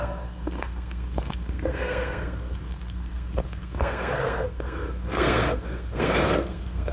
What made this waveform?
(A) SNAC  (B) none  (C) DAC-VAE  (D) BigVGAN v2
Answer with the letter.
A